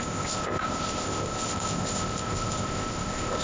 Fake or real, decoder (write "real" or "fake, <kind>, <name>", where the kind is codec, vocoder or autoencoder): fake, codec, ZipCodec